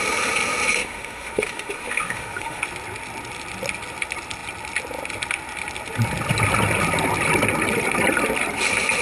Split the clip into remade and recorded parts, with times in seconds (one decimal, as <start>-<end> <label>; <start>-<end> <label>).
0.0-0.8 recorded; 0.8-2.6 remade; 2.6-9.0 recorded